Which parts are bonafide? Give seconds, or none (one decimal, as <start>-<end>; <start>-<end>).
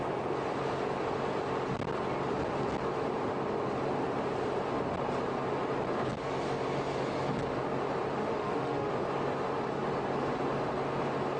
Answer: 0.0-8.2; 8.9-11.4